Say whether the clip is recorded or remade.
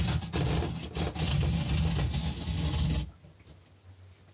recorded